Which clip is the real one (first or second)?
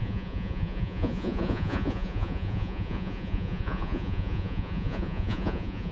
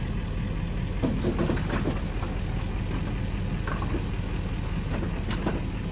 second